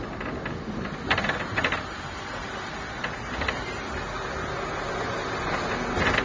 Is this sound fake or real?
real